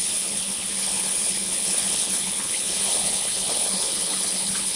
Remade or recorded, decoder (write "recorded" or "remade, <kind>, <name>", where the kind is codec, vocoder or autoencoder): remade, codec, HILCodec